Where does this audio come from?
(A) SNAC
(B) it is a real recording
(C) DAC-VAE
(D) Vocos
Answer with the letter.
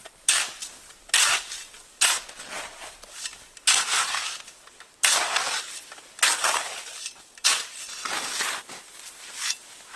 B